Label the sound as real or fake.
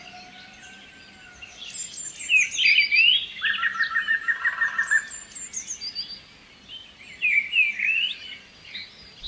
real